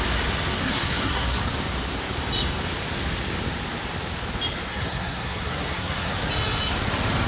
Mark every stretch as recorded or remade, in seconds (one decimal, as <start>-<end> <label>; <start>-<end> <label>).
0.0-0.6 recorded; 0.6-1.4 remade; 1.4-4.7 recorded; 4.7-6.1 remade; 6.1-7.3 recorded